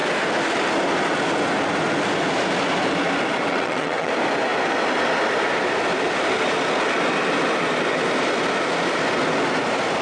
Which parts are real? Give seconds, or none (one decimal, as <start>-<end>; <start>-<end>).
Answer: 0.0-3.5; 4.1-10.0